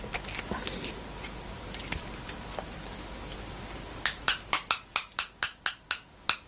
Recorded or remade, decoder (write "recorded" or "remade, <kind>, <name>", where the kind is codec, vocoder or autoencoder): recorded